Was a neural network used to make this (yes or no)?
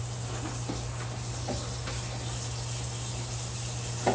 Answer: no